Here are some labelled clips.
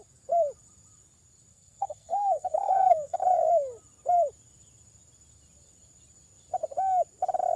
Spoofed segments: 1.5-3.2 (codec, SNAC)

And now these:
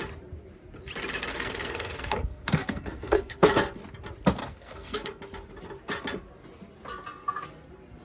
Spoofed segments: 1.3-3.5 (codec, SNAC); 4.4-5.2

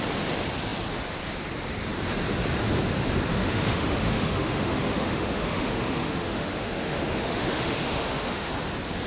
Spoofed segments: 3.3-8.5 (autoencoder, DAC-VAE)

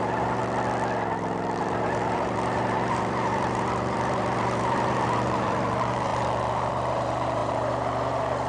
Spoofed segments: 0.0-0.4 (vocoder, BigVGAN v2); 1.6-8.5